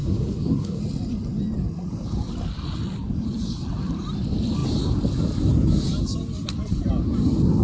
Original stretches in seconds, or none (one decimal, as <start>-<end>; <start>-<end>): 0.8-7.6